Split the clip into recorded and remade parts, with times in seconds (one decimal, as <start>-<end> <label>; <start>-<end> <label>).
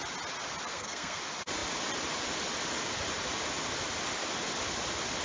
0.0-0.7 recorded; 0.7-1.2 remade; 1.2-5.2 recorded